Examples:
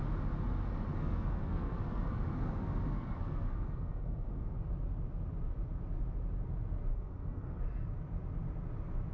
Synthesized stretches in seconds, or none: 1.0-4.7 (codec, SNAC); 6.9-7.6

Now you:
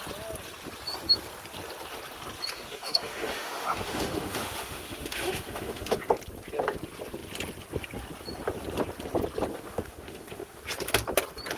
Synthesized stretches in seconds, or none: 2.5-6.0 (autoencoder, DAC-VAE); 9.5-10.6

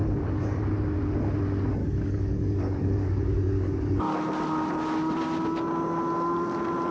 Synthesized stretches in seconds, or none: 0.0-0.7 (codec, DAC); 1.8-4.2